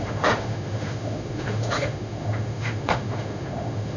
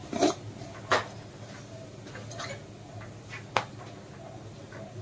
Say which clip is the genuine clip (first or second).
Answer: second